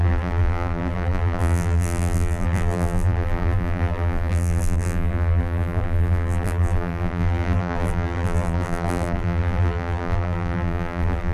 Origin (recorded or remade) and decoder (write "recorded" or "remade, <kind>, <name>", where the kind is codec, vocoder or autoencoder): remade, vocoder, BigVGAN v2